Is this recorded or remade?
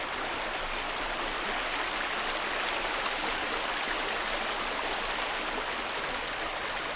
recorded